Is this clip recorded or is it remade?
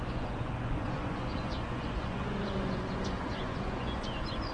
remade